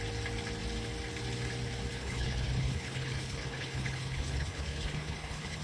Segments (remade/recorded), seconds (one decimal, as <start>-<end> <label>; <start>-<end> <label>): 0.0-1.9 recorded; 1.9-5.6 remade